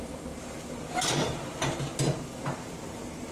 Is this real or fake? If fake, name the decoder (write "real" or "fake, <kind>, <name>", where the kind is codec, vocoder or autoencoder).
real